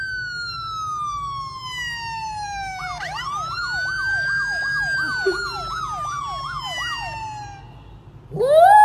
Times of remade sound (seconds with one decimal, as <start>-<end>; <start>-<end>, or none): 4.1-4.8